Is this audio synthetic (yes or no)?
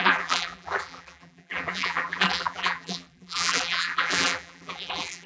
yes